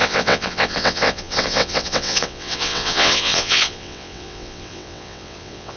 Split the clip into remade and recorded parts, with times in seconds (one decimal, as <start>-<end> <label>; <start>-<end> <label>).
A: 0.0-5.8 remade